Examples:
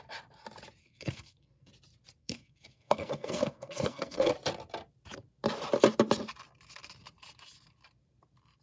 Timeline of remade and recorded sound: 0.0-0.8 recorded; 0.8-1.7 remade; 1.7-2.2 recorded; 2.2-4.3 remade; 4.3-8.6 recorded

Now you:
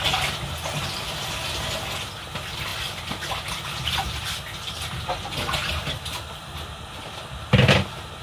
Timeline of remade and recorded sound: 0.0-8.2 recorded

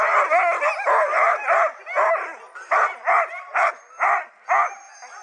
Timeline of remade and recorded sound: 0.0-1.1 recorded; 1.1-1.8 remade; 1.8-2.3 recorded; 2.3-4.2 remade; 4.2-5.2 recorded

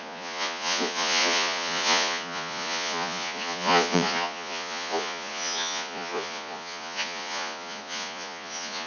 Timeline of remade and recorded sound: 0.0-8.9 remade

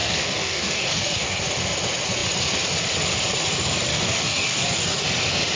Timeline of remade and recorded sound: 0.0-1.4 remade; 1.4-3.9 recorded; 3.9-5.0 remade; 5.0-5.6 recorded